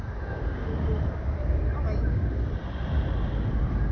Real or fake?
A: real